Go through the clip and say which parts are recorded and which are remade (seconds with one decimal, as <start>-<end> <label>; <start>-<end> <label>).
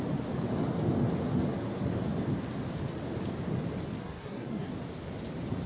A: 0.0-4.0 recorded; 4.0-4.7 remade; 4.7-5.7 recorded